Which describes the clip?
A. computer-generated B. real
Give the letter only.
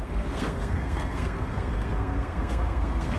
A